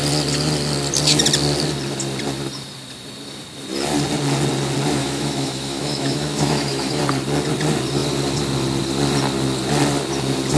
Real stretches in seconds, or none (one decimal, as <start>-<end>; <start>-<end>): 0.0-5.0; 7.0-10.6